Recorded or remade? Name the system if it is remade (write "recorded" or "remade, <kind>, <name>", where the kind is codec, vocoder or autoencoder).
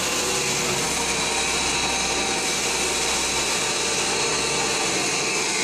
recorded